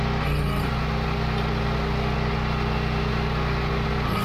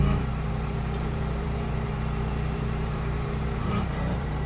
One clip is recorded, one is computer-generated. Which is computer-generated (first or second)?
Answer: second